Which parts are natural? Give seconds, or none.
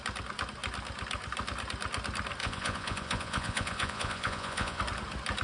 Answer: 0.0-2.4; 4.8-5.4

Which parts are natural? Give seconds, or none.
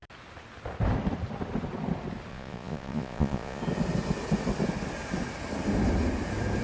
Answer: 0.0-2.3; 3.6-6.6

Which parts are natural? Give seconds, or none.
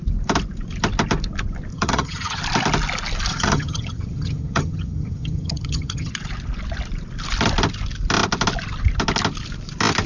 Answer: 0.0-1.7; 2.4-3.3; 6.1-10.1